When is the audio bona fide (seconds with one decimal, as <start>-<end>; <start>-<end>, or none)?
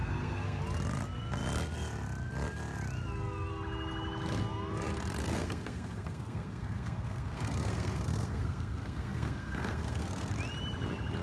0.6-5.2; 10.3-11.2